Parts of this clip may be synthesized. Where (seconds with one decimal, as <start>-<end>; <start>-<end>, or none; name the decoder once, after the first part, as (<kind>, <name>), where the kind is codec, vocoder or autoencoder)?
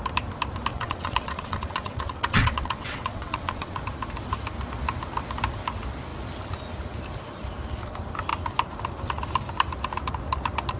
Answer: 0.7-3.8 (vocoder, WaveNeXt)